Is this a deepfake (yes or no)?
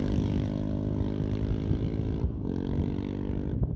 no